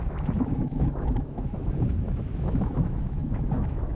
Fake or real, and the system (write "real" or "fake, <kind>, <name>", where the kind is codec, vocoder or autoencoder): fake, autoencoder, DAC-VAE